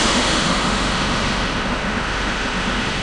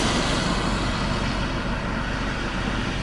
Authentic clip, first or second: second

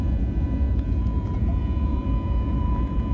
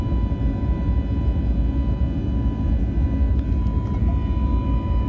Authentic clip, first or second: second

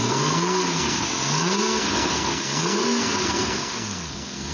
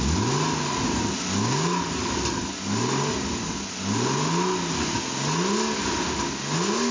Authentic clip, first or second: second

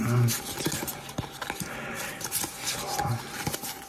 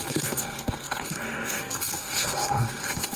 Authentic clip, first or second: first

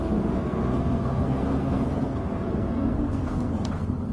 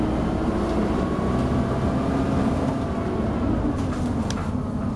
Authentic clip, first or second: second